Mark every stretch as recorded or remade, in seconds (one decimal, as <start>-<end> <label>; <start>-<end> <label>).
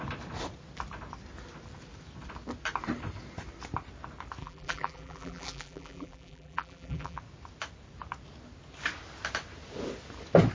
0.0-4.4 recorded; 4.4-7.2 remade; 7.2-10.5 recorded